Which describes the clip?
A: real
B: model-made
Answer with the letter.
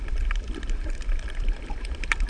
B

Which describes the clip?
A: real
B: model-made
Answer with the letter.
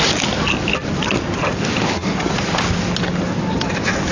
A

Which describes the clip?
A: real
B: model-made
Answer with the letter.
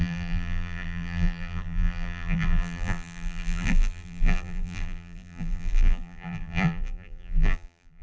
B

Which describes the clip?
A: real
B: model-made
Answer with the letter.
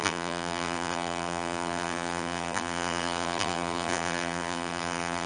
B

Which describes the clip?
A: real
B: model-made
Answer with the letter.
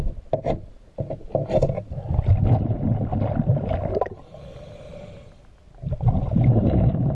A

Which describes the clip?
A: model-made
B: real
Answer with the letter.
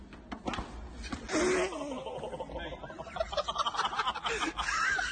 B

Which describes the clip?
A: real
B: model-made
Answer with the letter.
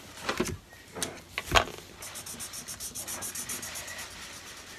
A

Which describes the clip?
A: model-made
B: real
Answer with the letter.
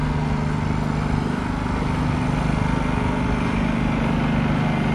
B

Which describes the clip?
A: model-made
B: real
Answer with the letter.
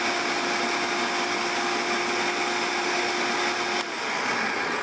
B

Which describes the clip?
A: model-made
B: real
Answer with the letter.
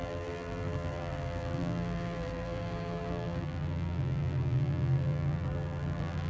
A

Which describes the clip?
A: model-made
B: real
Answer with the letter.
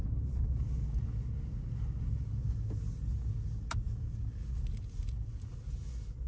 B